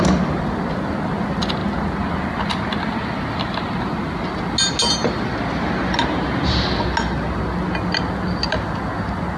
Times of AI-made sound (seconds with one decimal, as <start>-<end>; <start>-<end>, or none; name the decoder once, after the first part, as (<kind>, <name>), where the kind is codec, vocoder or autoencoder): none